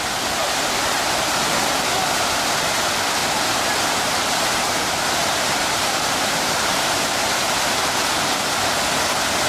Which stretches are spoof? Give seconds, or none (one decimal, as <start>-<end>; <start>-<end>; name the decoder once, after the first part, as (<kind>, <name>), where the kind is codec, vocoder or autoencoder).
0.9-1.6 (vocoder, BigVGAN v2); 3.2-6.9